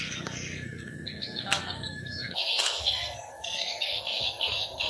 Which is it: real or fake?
fake